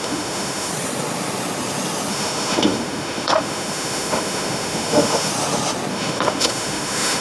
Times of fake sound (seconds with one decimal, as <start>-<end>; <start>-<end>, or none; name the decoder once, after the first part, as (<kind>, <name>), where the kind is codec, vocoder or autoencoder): 0.0-0.7 (autoencoder, DAC-VAE); 2.1-5.3; 5.9-7.2